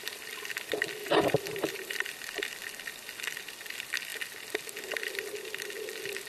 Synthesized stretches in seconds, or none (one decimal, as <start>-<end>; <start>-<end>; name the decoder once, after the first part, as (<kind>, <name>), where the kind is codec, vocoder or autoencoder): 1.0-2.0 (vocoder, BigVGAN v2)